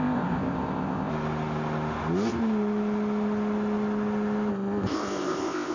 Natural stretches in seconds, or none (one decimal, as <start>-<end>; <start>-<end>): 1.1-4.5